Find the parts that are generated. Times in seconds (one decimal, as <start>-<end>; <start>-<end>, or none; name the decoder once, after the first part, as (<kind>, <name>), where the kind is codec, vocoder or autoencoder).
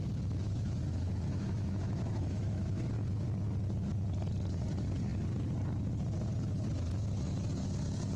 0.9-2.9 (autoencoder, DAC-VAE)